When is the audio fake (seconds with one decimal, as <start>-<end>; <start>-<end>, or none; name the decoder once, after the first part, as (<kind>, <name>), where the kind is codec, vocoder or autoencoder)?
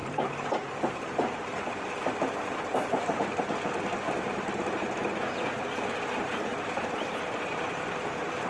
0.0-3.2 (vocoder, BigVGAN v2); 6.5-8.1